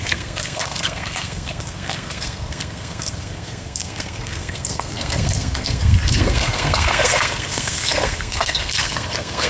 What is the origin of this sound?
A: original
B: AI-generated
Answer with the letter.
B